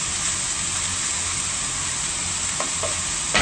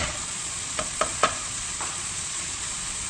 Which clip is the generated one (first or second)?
second